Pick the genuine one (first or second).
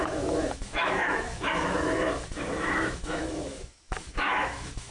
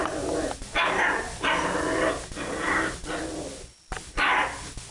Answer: second